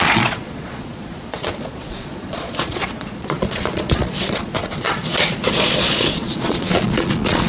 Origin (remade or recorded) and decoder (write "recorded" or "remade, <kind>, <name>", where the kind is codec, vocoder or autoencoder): remade, vocoder, Vocos